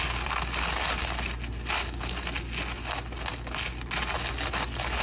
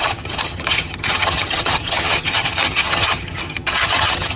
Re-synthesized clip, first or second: second